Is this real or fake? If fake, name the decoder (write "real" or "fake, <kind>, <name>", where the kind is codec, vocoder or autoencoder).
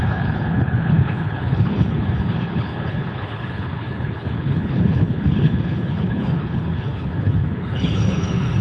fake, codec, HILCodec